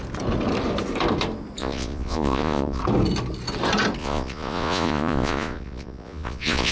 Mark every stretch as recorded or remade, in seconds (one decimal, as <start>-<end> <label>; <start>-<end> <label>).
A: 0.0-1.6 recorded; 1.6-2.8 remade; 2.8-4.0 recorded; 4.0-6.7 remade